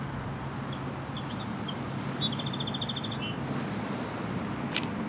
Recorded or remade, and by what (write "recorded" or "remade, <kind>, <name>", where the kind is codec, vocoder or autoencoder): recorded